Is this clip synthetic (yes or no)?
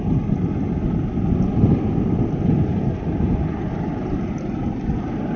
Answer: yes